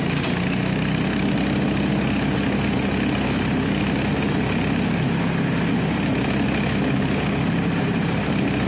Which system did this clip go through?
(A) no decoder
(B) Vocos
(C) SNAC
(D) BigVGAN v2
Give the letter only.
A